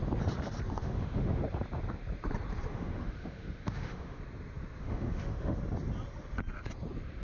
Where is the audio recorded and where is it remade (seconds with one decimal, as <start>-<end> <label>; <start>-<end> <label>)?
0.0-0.8 recorded; 0.8-1.4 remade; 1.4-2.7 recorded; 2.7-4.2 remade; 4.2-4.8 recorded; 4.8-5.6 remade; 5.6-7.2 recorded